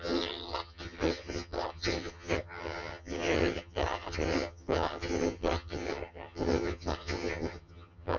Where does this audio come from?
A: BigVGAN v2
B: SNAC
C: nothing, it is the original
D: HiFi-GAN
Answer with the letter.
D